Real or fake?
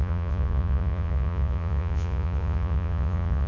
fake